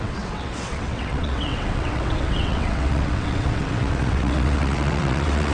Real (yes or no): no